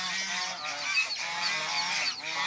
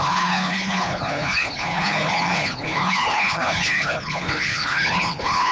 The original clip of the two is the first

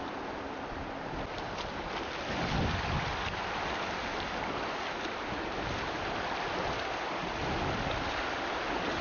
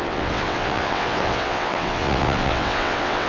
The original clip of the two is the first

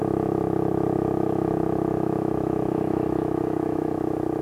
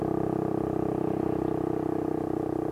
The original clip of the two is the second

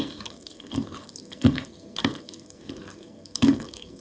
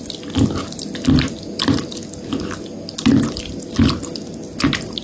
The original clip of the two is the second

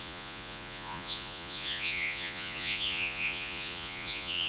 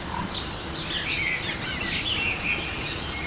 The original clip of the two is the second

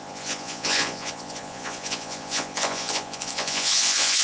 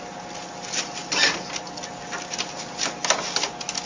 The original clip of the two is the second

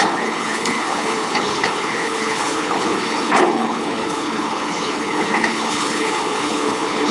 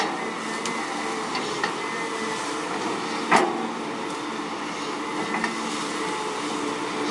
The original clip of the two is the second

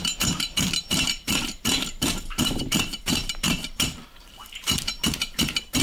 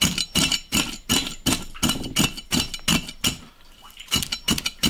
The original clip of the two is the second